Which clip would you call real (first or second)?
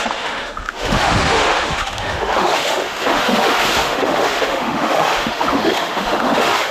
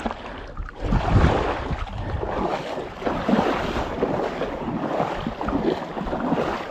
second